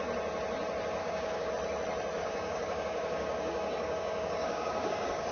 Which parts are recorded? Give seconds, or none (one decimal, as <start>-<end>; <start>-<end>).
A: 0.0-1.0; 1.5-2.2